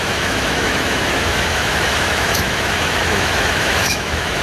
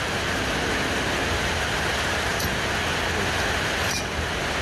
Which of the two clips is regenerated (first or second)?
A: first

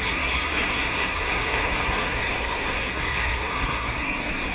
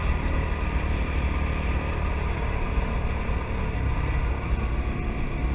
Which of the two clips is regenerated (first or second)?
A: first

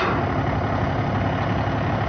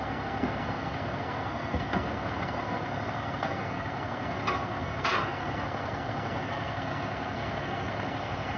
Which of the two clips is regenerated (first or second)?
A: second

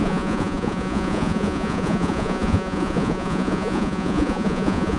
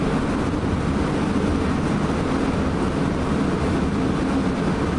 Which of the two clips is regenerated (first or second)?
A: first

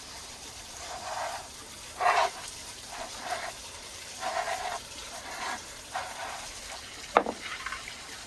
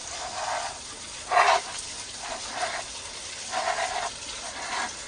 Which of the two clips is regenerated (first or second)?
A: first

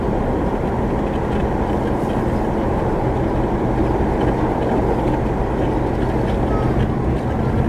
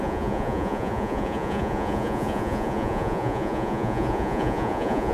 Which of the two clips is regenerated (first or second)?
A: second